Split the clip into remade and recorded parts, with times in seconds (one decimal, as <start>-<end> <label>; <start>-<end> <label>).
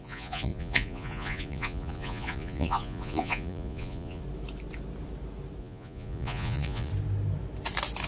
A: 0.0-4.2 remade; 4.2-5.6 recorded; 5.6-6.9 remade; 6.9-8.1 recorded